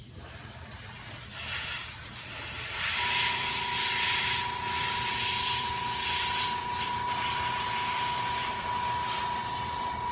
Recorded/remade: remade